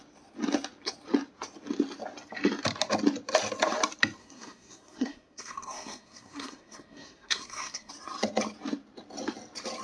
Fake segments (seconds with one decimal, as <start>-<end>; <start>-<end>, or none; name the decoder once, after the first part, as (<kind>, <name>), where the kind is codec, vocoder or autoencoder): 4.2-7.9 (codec, SNAC)